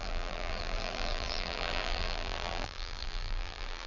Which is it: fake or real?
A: fake